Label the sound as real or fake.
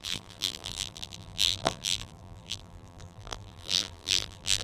fake